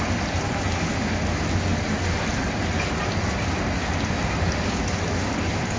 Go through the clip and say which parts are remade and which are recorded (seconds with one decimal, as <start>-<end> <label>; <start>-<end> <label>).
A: 0.0-5.8 recorded